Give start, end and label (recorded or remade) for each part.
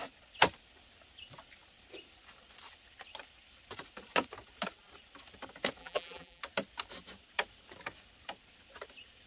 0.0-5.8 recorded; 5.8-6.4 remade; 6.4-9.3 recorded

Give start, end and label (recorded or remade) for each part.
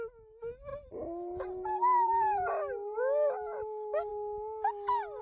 0.0-0.7 recorded; 0.7-2.5 remade; 2.5-5.2 recorded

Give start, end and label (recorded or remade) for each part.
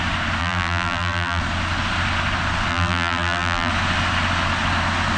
0.0-0.4 recorded; 0.4-1.4 remade; 1.4-2.7 recorded; 2.7-3.7 remade; 3.7-5.2 recorded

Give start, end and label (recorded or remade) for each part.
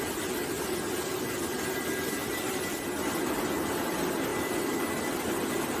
0.0-5.8 recorded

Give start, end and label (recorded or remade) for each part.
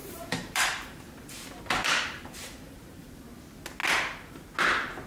0.0-1.1 remade; 1.1-1.8 recorded; 1.8-3.3 remade; 3.3-5.1 recorded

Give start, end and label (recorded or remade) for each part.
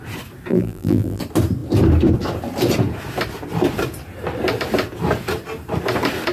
0.0-0.5 recorded; 0.5-1.2 remade; 1.2-6.3 recorded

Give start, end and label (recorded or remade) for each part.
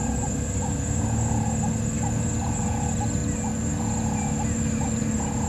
0.0-3.2 recorded; 3.2-3.7 remade; 3.7-5.5 recorded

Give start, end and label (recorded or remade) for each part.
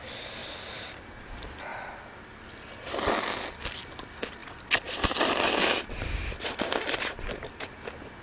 0.0-0.4 recorded; 0.4-1.1 remade; 1.1-1.7 recorded; 1.7-2.4 remade; 2.4-8.2 recorded